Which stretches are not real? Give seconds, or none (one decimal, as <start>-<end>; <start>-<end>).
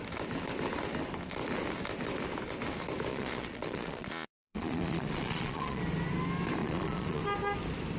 3.1-5.8; 6.6-7.2